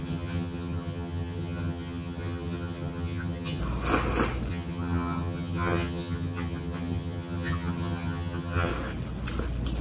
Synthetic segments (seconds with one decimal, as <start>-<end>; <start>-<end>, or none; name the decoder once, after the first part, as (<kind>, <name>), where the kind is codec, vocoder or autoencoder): 0.0-3.6 (vocoder, HiFi-GAN); 4.5-8.7